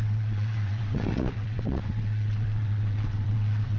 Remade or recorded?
remade